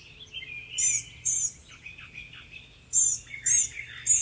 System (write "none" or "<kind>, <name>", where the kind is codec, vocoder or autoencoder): none